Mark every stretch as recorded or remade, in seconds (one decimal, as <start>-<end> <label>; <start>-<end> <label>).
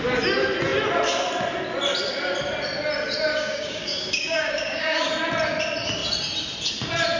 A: 0.0-3.3 recorded; 3.3-5.1 remade; 5.1-7.2 recorded